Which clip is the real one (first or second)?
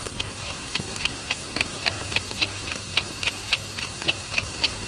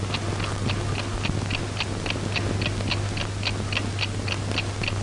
second